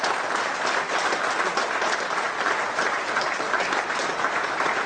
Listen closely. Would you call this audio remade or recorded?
recorded